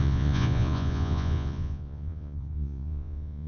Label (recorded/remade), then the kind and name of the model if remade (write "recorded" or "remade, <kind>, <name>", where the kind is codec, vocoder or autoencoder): remade, vocoder, Vocos